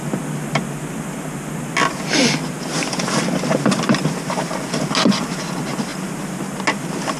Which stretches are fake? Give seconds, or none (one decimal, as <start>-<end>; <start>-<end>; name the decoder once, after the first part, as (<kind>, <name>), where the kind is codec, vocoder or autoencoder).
none